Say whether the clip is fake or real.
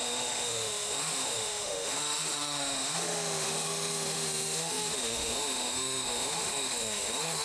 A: fake